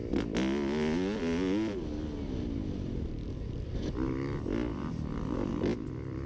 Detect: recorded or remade recorded